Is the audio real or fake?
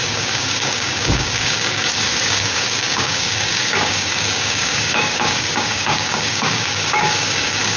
fake